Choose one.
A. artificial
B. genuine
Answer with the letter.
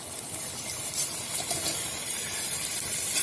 A